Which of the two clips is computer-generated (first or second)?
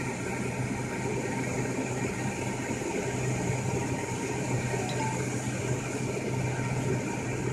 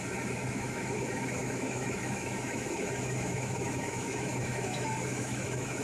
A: second